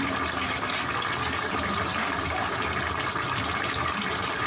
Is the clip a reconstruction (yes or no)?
no